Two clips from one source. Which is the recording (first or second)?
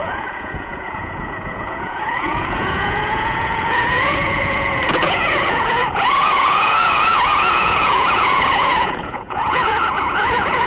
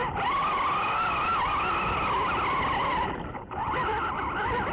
second